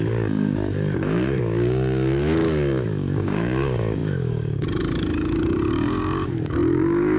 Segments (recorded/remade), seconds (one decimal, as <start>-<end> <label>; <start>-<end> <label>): 0.0-7.2 remade

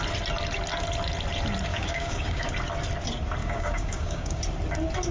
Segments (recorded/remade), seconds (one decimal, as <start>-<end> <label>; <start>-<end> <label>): 0.0-1.7 recorded; 1.7-2.5 remade; 2.5-3.4 recorded; 3.4-4.4 remade; 4.4-5.1 recorded

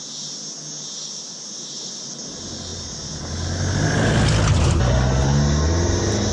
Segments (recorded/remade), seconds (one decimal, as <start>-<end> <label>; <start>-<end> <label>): 0.0-1.0 recorded; 1.0-2.1 remade; 2.1-6.3 recorded

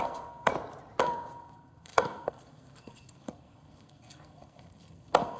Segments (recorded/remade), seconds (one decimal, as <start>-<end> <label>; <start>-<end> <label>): 0.0-0.5 remade; 0.5-1.0 recorded; 1.0-5.4 remade

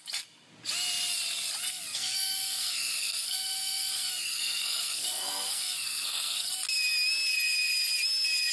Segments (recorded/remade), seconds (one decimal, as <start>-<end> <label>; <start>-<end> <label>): 0.0-1.7 recorded; 1.7-6.5 remade; 6.5-8.5 recorded

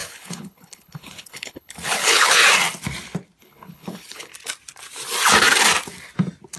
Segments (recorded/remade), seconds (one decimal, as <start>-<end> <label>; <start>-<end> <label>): 0.0-2.4 remade; 2.4-3.4 recorded; 3.4-4.3 remade; 4.3-6.6 recorded

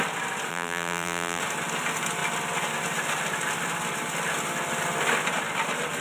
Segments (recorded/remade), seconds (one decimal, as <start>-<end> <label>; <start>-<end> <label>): 0.0-0.5 recorded; 0.5-1.4 remade; 1.4-6.0 recorded

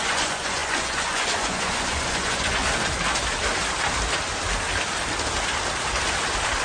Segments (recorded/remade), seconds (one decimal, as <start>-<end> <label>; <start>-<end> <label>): 0.0-2.6 remade; 2.6-6.6 recorded